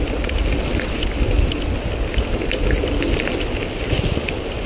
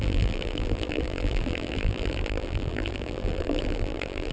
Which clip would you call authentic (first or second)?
first